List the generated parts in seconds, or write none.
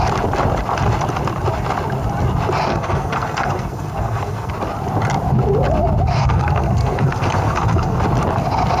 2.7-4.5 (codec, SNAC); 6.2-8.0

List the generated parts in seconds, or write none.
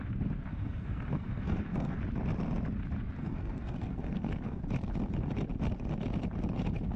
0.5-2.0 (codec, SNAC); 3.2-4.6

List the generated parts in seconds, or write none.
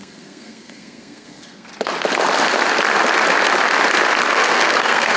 0.0-1.7 (codec, SNAC); 4.3-5.2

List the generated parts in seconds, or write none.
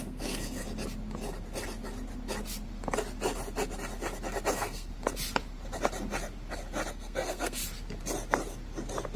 0.0-0.6 (codec, SNAC); 4.5-4.9; 6.9-7.6